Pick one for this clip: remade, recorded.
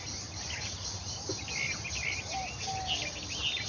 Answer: recorded